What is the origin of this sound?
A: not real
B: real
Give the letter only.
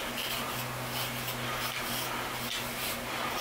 B